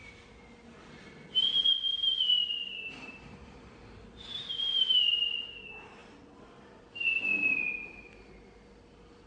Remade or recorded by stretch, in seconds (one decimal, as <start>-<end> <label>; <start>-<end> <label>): 0.0-2.2 recorded; 2.2-9.3 remade